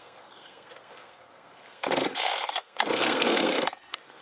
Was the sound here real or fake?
fake